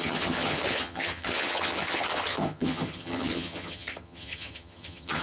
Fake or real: fake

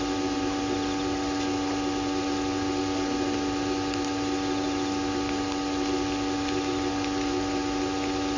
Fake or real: real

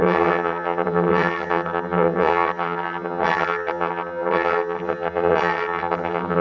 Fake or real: fake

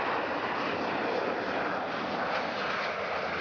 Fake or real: real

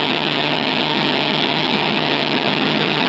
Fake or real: fake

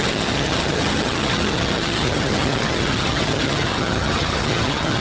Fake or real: fake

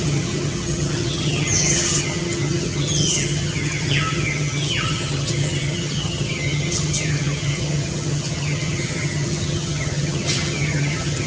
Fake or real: fake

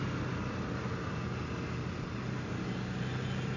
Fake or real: real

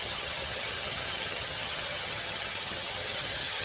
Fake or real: fake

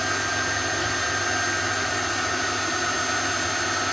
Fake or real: real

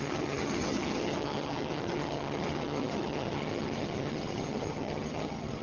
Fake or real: fake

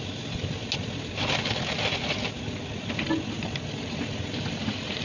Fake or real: real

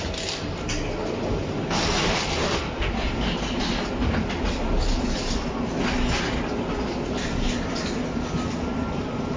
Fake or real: real